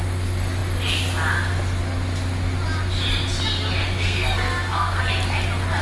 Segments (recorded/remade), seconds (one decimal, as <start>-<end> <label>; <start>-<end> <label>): 0.0-3.8 recorded; 3.8-5.0 remade; 5.0-5.8 recorded